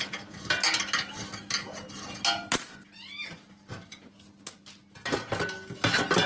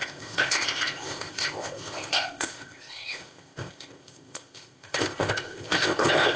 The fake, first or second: second